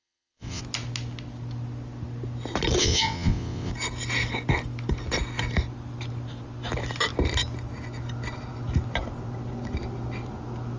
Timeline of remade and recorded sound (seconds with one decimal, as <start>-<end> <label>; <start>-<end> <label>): 0.0-0.6 remade; 0.6-2.8 recorded; 2.8-3.7 remade; 3.7-10.8 recorded